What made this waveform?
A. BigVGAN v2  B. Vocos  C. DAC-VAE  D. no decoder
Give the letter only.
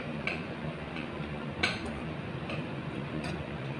B